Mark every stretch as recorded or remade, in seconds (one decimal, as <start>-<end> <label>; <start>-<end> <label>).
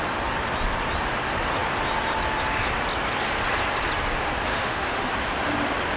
0.0-4.5 recorded; 4.5-5.1 remade; 5.1-6.0 recorded